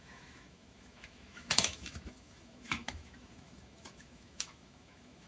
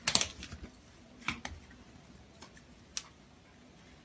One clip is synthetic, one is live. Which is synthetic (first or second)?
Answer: first